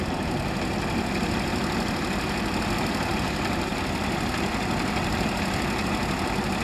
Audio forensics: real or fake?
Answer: real